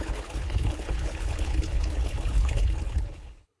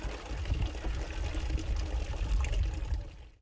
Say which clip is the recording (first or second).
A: second